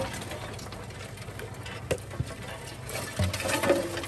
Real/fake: real